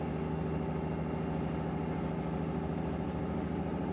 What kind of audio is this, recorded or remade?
recorded